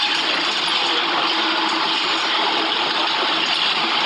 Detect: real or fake real